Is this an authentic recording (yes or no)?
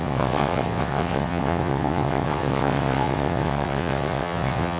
no